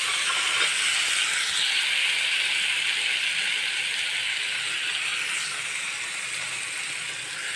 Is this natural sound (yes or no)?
yes